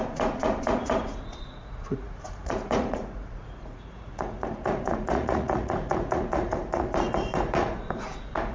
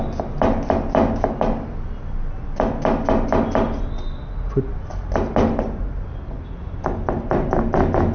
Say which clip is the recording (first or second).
second